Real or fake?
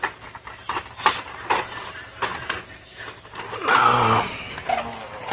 real